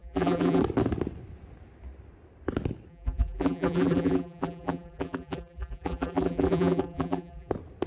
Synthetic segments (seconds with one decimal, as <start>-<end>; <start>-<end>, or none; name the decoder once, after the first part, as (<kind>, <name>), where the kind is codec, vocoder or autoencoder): 0.0-0.6 (vocoder, BigVGAN v2); 2.9-7.5